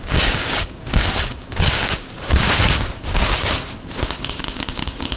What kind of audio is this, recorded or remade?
remade